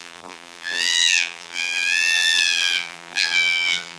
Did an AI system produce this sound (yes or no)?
yes